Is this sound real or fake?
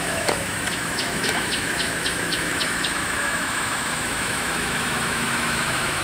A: fake